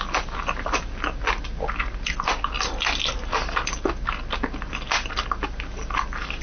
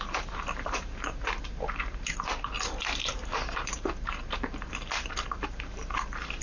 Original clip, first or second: first